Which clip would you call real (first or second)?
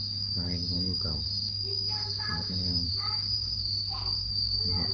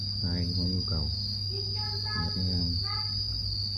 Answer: second